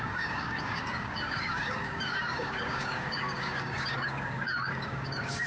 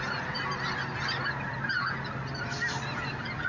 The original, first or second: second